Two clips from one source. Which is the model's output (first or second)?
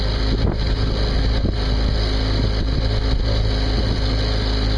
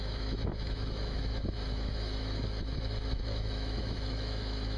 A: second